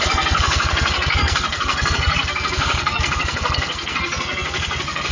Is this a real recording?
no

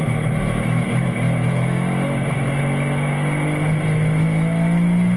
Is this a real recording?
no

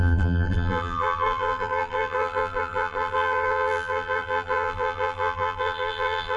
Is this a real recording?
no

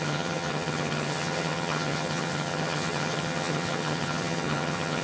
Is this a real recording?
no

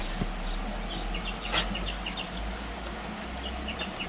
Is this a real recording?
yes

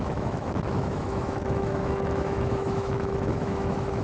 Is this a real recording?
no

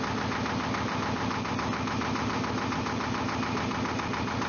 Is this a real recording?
yes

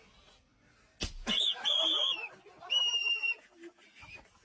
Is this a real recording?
yes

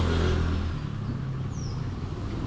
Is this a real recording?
yes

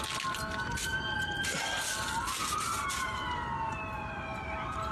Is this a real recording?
yes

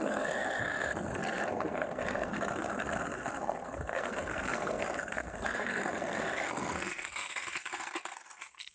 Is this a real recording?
no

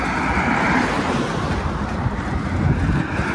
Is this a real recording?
yes